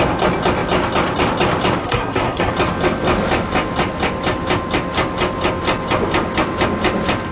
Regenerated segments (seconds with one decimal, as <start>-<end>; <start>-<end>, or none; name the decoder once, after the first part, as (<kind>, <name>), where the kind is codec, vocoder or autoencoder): 1.8-2.5 (codec, SNAC)